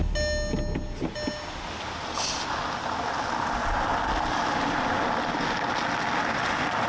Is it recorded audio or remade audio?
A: recorded